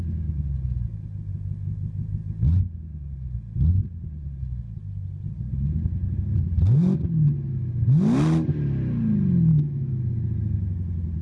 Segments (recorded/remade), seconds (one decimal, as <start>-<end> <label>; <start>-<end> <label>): 0.0-9.5 recorded; 9.5-10.0 remade; 10.0-11.2 recorded